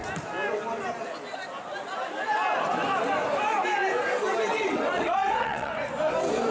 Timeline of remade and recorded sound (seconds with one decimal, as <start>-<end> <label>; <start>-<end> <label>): 0.0-4.4 recorded; 4.4-5.7 remade; 5.7-6.5 recorded